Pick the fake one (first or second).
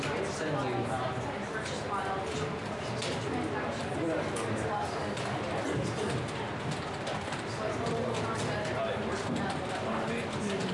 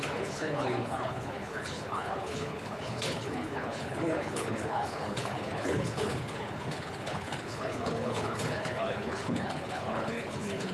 second